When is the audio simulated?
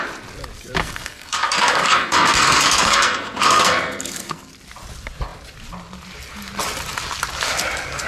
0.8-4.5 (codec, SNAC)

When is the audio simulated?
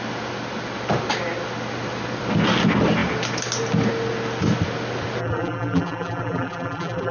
5.2-7.1 (vocoder, BigVGAN v2)